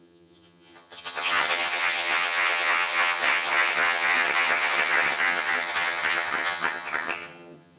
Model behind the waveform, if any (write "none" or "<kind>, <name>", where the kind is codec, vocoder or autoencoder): vocoder, HiFi-GAN